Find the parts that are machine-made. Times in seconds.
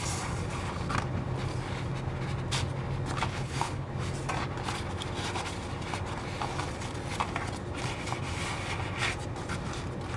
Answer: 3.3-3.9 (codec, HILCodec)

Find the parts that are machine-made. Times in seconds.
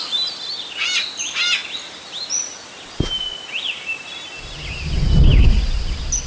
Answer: none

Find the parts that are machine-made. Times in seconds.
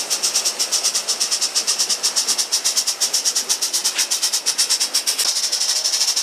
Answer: none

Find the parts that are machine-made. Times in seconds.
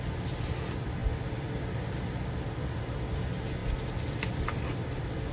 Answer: none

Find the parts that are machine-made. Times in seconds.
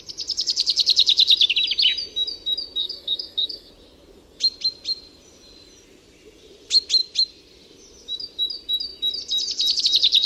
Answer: 2.8-3.7 (codec, SNAC)